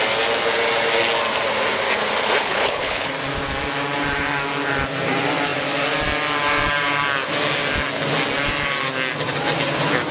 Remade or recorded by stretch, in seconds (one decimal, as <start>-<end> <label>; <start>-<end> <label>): 0.0-2.4 recorded; 2.4-3.1 remade; 3.1-10.1 recorded